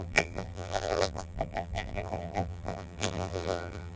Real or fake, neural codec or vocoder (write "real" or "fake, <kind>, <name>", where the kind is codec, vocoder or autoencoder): fake, vocoder, BigVGAN v2